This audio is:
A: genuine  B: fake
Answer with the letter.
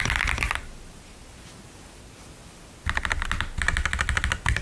A